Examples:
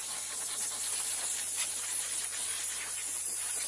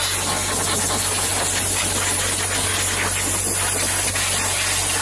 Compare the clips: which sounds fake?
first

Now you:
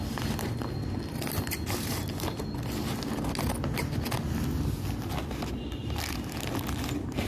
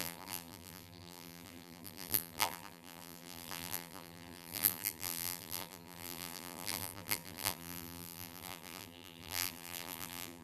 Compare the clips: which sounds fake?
second